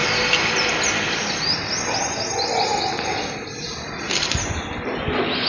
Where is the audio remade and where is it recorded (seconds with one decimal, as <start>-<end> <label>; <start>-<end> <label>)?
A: 0.0-5.5 recorded